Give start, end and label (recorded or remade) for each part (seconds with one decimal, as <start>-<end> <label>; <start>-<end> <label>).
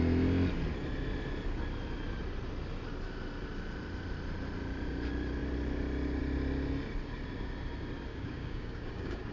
0.0-8.1 recorded; 8.1-9.3 remade